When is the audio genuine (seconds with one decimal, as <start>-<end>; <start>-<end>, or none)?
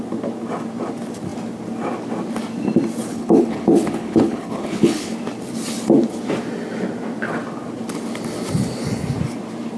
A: 0.0-3.1; 5.1-9.8